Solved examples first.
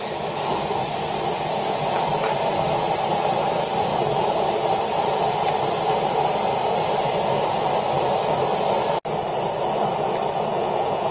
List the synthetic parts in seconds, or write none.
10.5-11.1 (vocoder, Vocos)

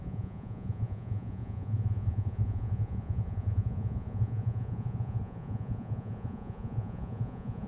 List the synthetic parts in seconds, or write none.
0.0-7.7 (vocoder, Vocos)